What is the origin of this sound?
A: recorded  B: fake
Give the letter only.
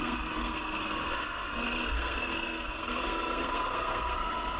B